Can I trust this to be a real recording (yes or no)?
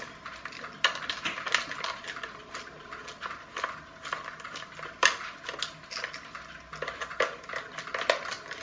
yes